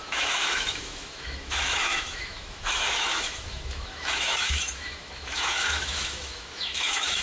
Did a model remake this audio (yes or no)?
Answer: yes